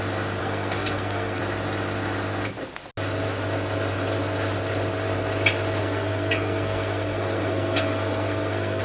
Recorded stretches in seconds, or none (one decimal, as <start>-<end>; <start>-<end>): 0.0-0.4; 1.4-5.8

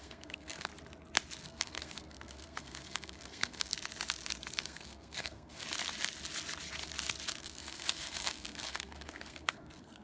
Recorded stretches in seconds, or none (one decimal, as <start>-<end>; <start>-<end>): 0.7-1.4; 3.7-4.6; 5.6-7.4

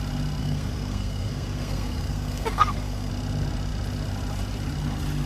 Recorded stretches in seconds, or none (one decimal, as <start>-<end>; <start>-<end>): 0.0-0.4; 3.1-5.3

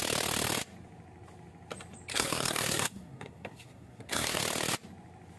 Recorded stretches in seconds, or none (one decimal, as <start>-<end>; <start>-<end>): 0.0-2.1; 4.4-5.4